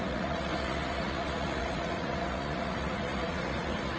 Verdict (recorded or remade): remade